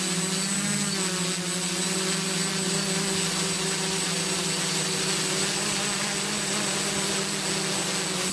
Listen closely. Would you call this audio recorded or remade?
recorded